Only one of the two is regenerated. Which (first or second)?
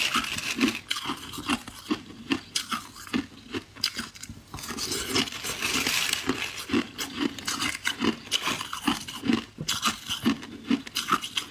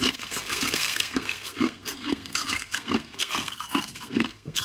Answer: second